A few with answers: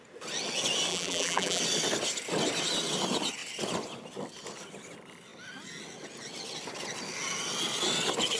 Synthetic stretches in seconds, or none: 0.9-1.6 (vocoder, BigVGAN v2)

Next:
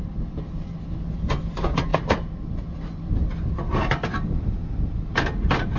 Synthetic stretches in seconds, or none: none

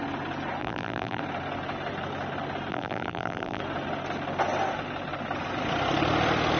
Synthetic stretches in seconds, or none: 0.6-1.2 (vocoder, BigVGAN v2); 2.7-3.6

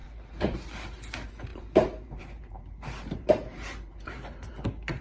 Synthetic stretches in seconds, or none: 1.5-4.5 (vocoder, BigVGAN v2)

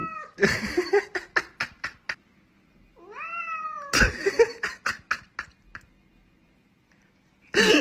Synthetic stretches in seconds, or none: none